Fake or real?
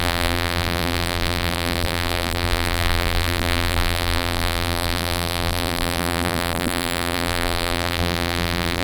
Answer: fake